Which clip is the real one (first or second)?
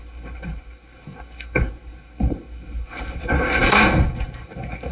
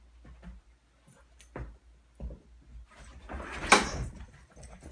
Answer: second